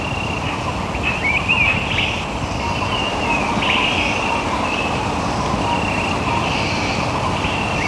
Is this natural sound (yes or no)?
yes